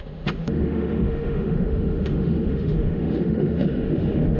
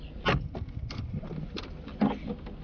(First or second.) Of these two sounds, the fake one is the first